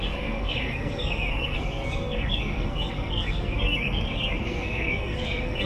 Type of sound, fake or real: fake